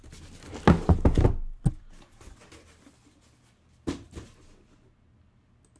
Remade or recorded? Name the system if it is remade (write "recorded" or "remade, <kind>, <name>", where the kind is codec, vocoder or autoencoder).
recorded